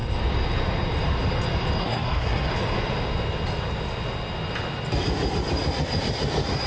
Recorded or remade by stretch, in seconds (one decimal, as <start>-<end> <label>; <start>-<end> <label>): 0.0-1.8 recorded; 1.8-2.5 remade; 2.5-6.7 recorded